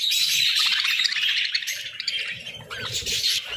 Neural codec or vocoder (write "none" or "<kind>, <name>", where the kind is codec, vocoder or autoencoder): vocoder, BigVGAN v2